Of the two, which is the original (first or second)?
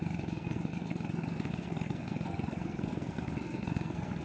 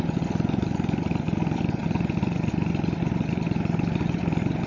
second